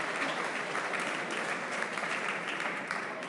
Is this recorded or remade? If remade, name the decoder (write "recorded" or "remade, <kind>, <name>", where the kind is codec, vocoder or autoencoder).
remade, vocoder, BigVGAN v2